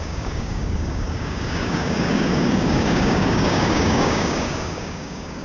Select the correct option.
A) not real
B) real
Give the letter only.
A